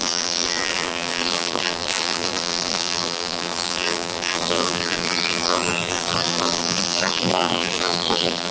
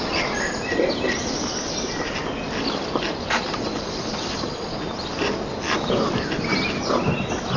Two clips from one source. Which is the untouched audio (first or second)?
second